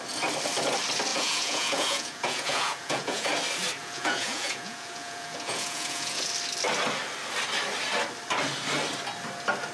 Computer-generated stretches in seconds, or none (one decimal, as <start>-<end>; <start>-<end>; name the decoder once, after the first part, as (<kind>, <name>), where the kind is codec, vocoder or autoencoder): 1.1-3.3 (vocoder, Vocos); 3.8-6.3